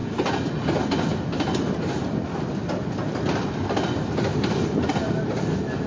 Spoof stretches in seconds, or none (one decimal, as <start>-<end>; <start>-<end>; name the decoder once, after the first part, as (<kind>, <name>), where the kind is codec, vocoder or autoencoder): 1.5-2.4 (vocoder, BigVGAN v2); 4.3-4.8